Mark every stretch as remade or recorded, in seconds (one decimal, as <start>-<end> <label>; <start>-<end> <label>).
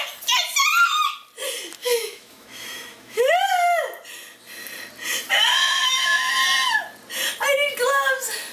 0.0-1.8 recorded; 1.8-3.3 remade; 3.3-5.6 recorded; 5.6-6.3 remade; 6.3-8.5 recorded